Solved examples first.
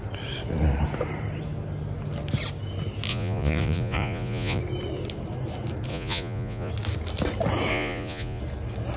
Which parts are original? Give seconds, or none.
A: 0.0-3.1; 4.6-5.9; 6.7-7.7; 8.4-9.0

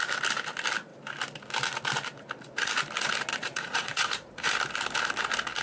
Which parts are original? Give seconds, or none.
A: 0.0-3.3; 4.5-5.6